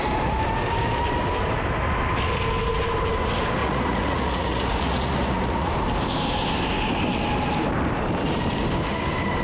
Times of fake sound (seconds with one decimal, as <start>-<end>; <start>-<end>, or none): 3.6-5.7